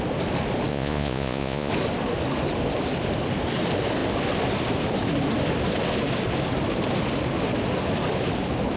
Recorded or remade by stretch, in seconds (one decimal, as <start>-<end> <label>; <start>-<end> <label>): 0.0-0.7 recorded; 0.7-1.7 remade; 1.7-8.8 recorded